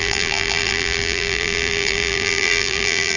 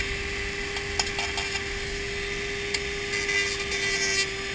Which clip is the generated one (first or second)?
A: first